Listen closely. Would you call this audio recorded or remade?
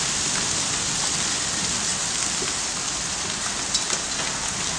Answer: recorded